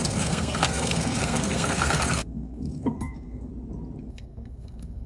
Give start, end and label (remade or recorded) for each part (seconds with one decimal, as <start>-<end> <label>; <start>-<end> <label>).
0.0-3.5 remade; 3.5-4.0 recorded; 4.0-5.1 remade